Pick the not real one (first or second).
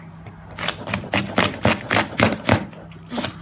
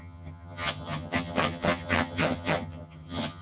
second